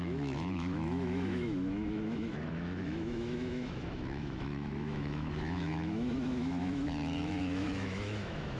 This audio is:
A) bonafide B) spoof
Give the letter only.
B